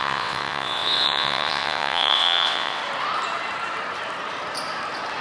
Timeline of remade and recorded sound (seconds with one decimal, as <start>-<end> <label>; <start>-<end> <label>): 0.0-2.8 remade; 2.8-5.2 recorded